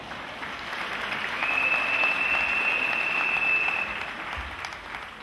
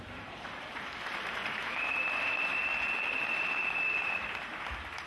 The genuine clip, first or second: first